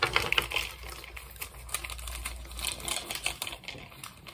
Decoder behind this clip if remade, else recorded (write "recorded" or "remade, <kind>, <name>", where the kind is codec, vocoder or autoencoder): recorded